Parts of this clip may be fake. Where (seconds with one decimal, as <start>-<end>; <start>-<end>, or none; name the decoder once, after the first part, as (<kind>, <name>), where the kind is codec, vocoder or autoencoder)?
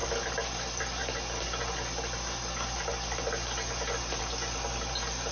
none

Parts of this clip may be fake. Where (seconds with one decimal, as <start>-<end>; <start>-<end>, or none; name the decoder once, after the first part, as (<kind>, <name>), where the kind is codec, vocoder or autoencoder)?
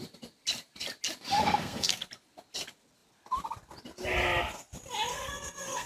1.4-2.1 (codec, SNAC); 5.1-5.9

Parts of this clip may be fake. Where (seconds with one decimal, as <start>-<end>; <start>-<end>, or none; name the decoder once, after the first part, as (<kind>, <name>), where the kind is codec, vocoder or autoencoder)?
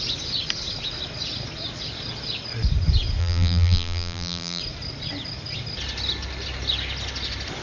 3.2-4.6 (vocoder, BigVGAN v2)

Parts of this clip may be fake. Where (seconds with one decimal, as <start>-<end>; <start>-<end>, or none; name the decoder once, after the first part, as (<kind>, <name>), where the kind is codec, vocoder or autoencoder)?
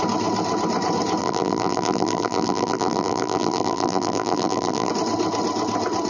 1.2-4.9 (vocoder, BigVGAN v2)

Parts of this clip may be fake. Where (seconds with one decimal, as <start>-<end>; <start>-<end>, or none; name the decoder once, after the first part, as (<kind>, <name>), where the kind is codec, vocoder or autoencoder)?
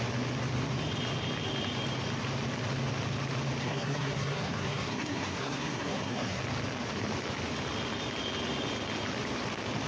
3.6-6.4 (codec, SNAC)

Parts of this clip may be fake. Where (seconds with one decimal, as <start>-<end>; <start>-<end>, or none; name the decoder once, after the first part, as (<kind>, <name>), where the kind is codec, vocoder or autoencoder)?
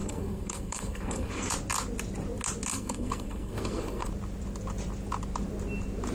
0.0-1.5 (codec, SNAC); 2.7-4.1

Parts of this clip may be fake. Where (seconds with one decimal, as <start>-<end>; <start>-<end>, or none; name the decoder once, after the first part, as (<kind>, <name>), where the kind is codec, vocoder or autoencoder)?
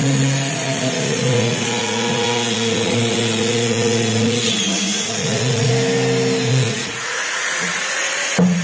0.0-5.7 (vocoder, Vocos); 6.5-8.6